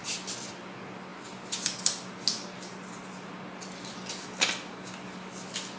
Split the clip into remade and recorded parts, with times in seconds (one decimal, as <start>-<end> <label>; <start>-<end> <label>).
0.0-5.8 recorded